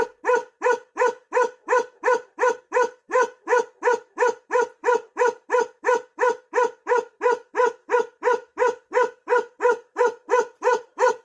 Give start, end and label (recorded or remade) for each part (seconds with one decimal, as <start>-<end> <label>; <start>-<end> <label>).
0.0-11.2 recorded